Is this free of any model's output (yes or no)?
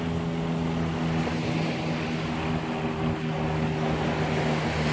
yes